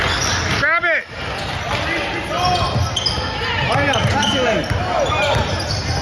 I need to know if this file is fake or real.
real